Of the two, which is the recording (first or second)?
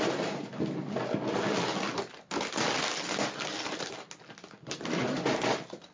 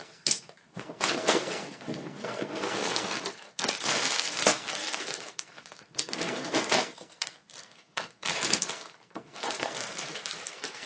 first